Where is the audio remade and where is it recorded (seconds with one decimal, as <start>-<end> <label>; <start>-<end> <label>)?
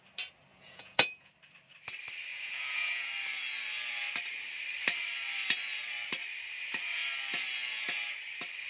0.0-0.5 recorded; 0.5-1.3 remade; 1.3-2.3 recorded; 2.3-3.1 remade; 3.1-8.7 recorded